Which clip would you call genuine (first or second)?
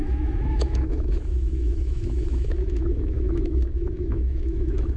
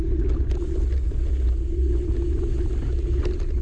second